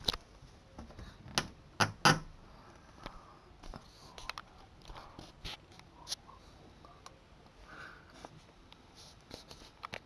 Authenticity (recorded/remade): recorded